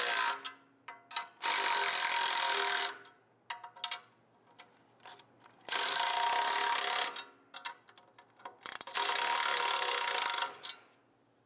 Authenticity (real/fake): real